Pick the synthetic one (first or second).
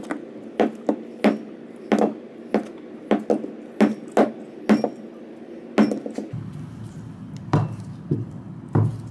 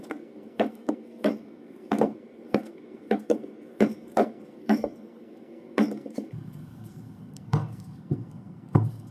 second